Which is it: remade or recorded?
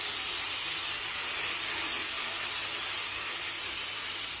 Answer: recorded